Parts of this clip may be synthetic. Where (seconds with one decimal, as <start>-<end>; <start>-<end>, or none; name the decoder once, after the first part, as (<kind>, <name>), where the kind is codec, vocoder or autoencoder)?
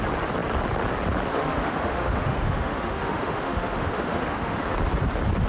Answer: 1.3-4.6 (autoencoder, DAC-VAE)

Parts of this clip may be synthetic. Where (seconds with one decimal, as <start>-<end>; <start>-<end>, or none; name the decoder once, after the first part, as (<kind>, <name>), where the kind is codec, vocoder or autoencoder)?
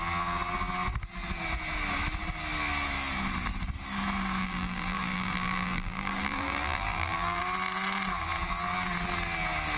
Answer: 4.4-7.4 (vocoder, BigVGAN v2)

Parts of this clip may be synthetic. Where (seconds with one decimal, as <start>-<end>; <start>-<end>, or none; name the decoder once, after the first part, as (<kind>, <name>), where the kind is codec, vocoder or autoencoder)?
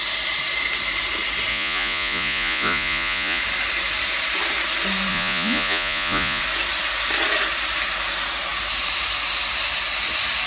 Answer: 1.5-3.4 (vocoder, Vocos); 5.1-6.4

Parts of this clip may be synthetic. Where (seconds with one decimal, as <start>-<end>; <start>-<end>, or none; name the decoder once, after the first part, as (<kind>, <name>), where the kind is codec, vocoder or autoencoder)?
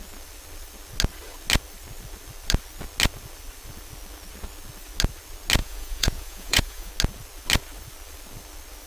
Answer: 5.6-6.9 (vocoder, Vocos)